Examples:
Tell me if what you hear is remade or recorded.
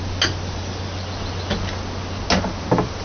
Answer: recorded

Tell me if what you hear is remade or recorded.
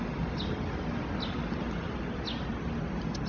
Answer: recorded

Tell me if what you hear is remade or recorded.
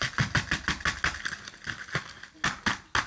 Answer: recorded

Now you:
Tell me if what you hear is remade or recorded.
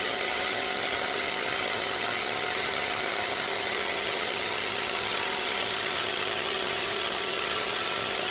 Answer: remade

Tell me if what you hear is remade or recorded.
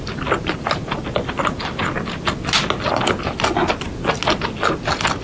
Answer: recorded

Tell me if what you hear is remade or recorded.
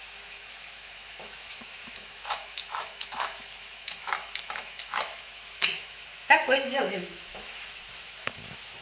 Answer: remade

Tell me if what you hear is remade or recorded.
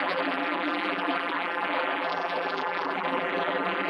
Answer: remade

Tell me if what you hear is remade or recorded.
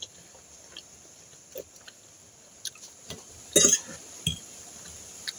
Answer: recorded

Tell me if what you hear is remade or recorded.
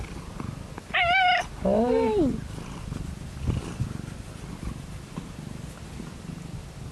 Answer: recorded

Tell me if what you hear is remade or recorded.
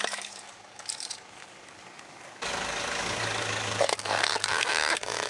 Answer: remade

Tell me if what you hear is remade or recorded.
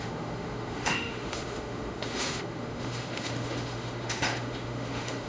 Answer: remade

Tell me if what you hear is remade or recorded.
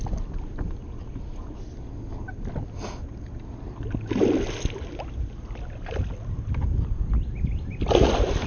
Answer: recorded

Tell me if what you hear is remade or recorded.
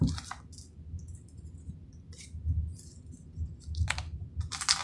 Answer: recorded